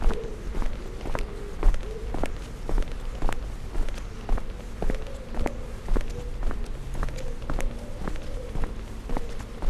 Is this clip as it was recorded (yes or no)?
yes